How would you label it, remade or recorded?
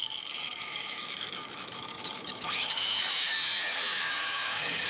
remade